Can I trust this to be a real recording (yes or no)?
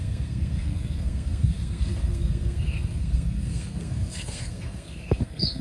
no